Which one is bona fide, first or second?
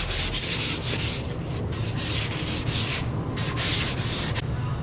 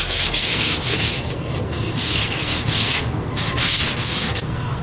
first